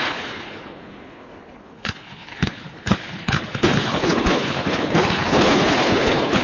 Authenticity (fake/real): fake